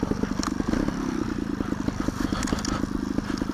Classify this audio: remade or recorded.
recorded